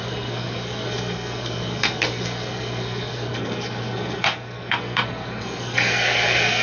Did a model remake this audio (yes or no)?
yes